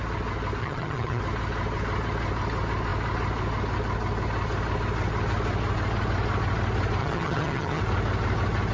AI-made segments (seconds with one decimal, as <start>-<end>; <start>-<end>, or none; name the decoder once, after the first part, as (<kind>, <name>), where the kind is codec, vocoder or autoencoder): 0.6-1.2 (vocoder, HiFi-GAN); 7.0-7.8